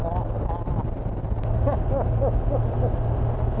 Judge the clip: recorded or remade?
recorded